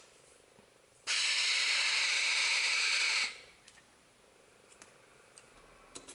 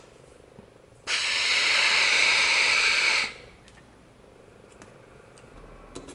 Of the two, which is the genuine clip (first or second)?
second